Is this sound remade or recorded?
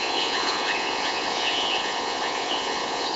remade